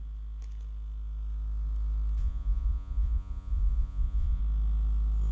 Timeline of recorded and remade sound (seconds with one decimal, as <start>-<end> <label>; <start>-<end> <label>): 0.0-2.2 recorded; 2.2-4.4 remade; 4.4-5.3 recorded